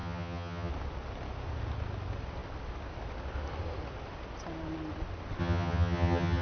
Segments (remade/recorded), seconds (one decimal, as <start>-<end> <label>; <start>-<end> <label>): 0.0-0.7 remade; 0.7-5.4 recorded; 5.4-6.4 remade